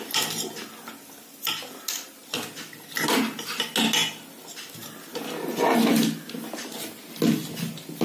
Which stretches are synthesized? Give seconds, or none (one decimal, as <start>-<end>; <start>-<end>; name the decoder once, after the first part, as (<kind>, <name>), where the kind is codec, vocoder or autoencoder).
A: none